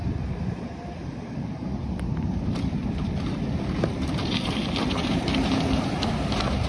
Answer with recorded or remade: remade